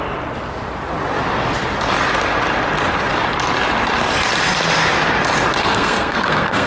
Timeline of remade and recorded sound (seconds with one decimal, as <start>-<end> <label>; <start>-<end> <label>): 0.0-5.6 recorded; 5.6-6.7 remade